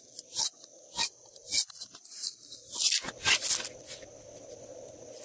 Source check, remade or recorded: remade